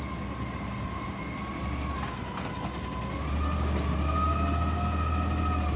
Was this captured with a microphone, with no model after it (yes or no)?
yes